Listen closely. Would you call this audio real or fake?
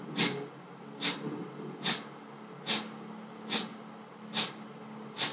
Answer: real